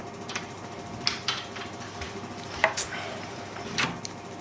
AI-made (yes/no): no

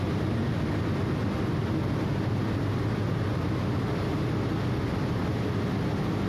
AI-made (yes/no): no